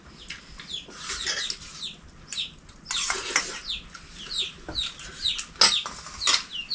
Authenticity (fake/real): real